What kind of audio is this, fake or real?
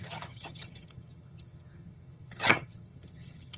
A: fake